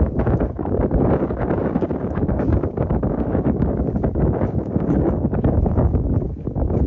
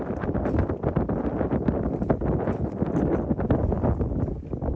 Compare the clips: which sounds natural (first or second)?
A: second